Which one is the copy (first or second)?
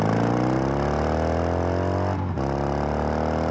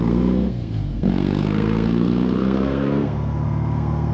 second